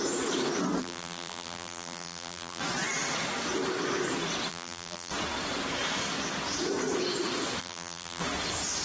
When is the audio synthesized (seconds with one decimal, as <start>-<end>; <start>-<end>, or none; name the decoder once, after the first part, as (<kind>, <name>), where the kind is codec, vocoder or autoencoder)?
0.8-2.6 (vocoder, BigVGAN v2); 4.5-5.1; 7.6-8.2